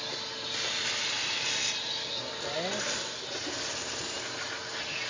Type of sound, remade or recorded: recorded